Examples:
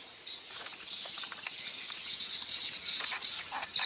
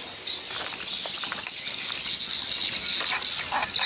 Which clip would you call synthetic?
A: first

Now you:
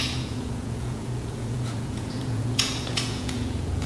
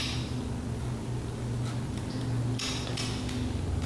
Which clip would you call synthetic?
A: first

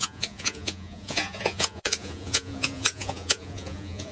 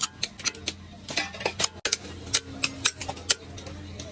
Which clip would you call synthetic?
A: first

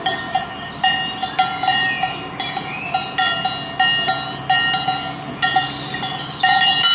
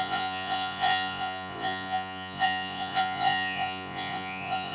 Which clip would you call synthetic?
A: second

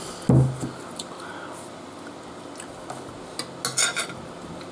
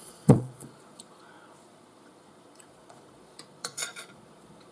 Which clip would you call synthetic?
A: second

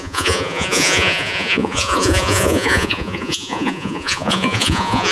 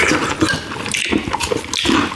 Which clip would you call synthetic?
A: first